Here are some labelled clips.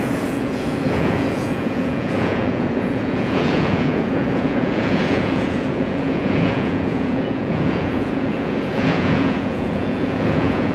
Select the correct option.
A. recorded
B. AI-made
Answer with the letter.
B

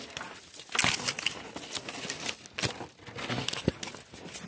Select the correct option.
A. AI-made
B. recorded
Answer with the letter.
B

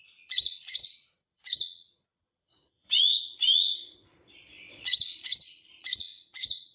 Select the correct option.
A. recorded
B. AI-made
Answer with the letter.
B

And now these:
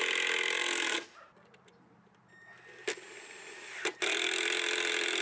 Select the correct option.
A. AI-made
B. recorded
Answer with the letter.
B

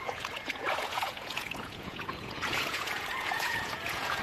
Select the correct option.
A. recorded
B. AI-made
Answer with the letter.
B